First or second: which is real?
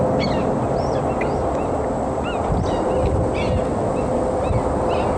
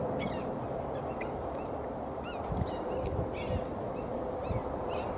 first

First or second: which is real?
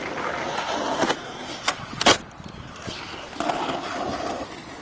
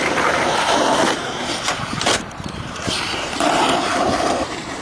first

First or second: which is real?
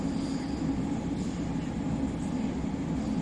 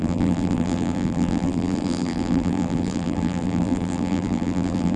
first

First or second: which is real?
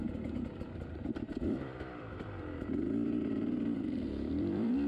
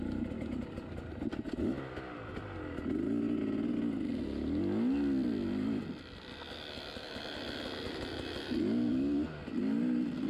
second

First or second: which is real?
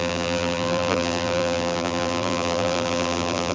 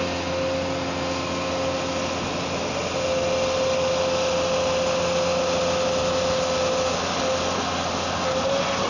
second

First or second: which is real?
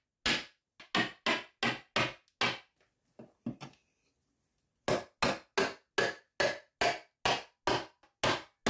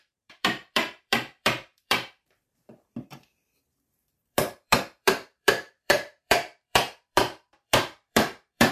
first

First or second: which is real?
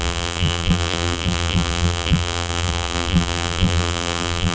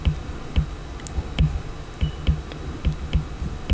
second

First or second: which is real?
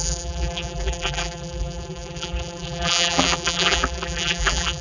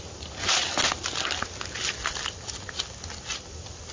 second